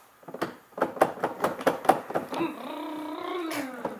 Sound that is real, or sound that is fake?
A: real